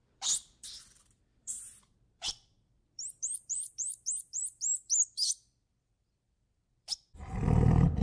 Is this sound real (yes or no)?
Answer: no